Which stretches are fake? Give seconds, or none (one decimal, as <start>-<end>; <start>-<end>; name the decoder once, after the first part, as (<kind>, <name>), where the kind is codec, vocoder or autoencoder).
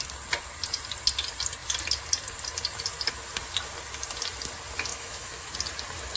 4.9-5.5 (autoencoder, DAC-VAE)